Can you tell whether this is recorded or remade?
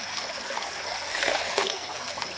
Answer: remade